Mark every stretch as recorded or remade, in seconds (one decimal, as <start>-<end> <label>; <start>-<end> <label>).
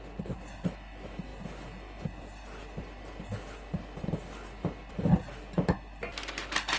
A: 0.0-6.8 recorded